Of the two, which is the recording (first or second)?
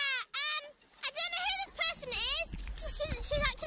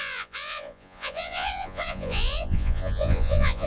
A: first